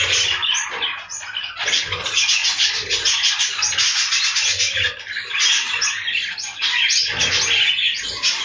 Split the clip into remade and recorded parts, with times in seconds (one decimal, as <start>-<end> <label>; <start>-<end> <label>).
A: 0.0-8.4 recorded